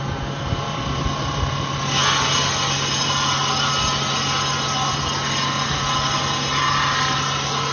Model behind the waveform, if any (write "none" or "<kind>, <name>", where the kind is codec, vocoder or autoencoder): none